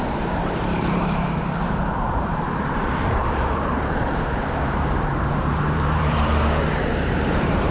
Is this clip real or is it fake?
fake